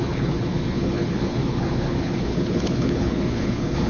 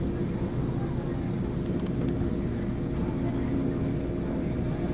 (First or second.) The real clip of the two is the second